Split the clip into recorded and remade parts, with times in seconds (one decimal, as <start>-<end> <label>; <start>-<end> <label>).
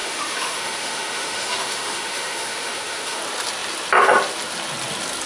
0.0-3.2 remade; 3.2-5.3 recorded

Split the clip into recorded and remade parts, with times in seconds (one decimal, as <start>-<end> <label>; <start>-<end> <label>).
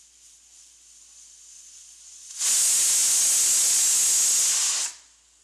0.0-5.4 recorded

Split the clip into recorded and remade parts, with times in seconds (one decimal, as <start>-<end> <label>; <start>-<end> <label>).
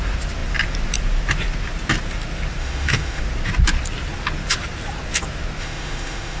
0.0-2.6 recorded; 2.6-3.2 remade; 3.2-5.6 recorded; 5.6-6.4 remade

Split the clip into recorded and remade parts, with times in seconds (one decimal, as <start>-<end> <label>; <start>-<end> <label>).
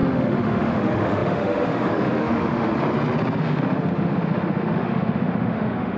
0.0-2.7 remade; 2.7-3.4 recorded; 3.4-6.0 remade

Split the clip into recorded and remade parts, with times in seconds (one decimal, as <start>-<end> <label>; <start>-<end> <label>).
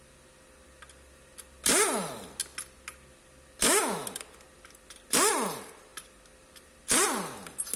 0.0-7.8 recorded